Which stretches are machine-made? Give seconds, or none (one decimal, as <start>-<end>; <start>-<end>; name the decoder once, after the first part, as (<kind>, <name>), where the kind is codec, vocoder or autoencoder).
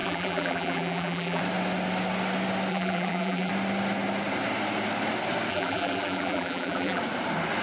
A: 0.0-1.4 (vocoder, BigVGAN v2); 2.7-3.5; 5.5-7.0